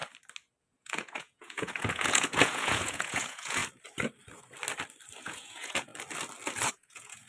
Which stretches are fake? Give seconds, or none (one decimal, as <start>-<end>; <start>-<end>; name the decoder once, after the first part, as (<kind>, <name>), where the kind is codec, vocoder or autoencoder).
0.6-3.6 (vocoder, Vocos); 5.2-5.9; 6.7-7.3